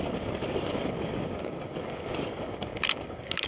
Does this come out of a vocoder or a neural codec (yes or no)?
yes